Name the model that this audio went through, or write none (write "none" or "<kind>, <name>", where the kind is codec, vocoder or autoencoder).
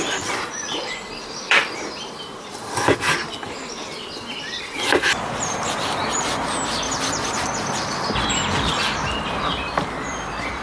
vocoder, BigVGAN v2